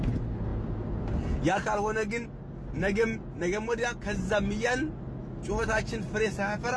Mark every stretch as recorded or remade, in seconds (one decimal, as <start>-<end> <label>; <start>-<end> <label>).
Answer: 0.0-6.8 recorded